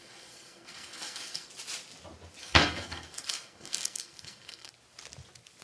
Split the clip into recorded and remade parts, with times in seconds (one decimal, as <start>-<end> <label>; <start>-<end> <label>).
0.0-1.5 remade; 1.5-2.4 recorded; 2.4-4.7 remade; 4.7-5.6 recorded